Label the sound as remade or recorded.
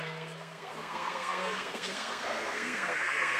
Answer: remade